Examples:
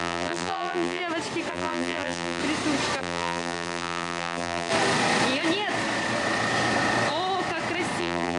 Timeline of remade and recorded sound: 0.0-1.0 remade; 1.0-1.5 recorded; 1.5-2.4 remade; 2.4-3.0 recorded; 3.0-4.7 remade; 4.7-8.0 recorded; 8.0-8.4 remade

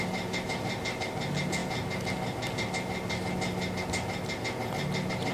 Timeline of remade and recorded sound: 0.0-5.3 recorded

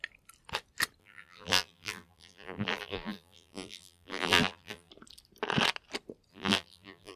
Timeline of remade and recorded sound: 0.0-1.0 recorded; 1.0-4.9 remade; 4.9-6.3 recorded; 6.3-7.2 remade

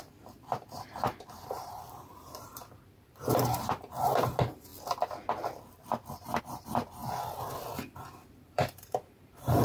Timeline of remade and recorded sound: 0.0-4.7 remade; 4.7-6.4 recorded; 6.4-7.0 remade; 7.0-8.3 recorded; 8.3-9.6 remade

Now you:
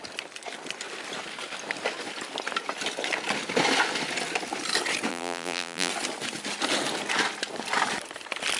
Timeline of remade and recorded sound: 0.0-5.1 recorded; 5.1-5.9 remade; 5.9-8.6 recorded

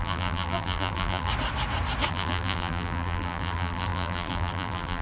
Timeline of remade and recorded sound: 0.0-1.3 remade; 1.3-2.1 recorded; 2.1-5.0 remade

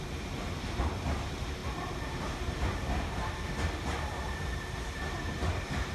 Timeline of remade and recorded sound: 0.0-5.9 remade